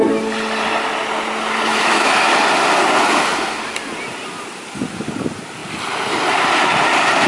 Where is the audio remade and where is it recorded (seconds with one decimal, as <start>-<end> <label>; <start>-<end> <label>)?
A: 0.0-1.7 recorded; 1.7-2.2 remade; 2.2-7.3 recorded